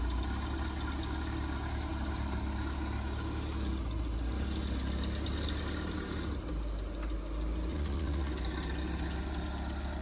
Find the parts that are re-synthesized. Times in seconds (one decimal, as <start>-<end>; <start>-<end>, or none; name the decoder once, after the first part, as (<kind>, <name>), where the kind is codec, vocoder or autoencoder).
7.7-8.3 (vocoder, Vocos)